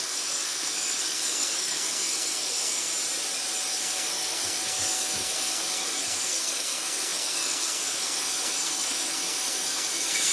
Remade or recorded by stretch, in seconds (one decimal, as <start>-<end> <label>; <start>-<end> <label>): 0.0-2.9 remade; 2.9-3.7 recorded; 3.7-10.3 remade